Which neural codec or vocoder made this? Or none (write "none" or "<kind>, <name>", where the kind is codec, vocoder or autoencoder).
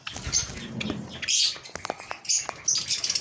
none